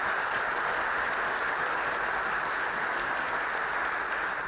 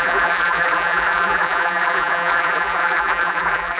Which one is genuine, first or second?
first